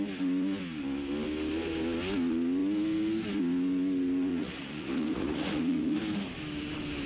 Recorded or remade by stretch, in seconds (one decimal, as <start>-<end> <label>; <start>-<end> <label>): 0.0-4.3 recorded; 4.3-6.0 remade; 6.0-7.1 recorded